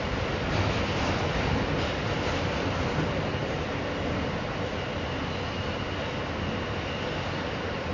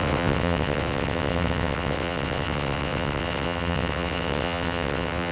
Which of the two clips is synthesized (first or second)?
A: second